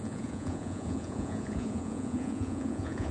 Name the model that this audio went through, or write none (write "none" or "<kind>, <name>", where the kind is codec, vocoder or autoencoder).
vocoder, Vocos